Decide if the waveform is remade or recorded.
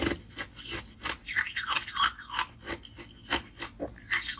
recorded